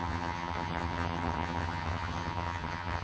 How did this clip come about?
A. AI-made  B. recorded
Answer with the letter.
A